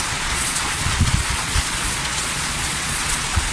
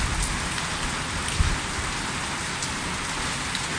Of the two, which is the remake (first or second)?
first